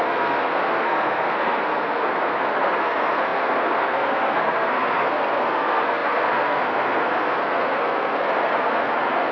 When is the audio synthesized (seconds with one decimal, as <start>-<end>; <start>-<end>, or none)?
0.0-9.3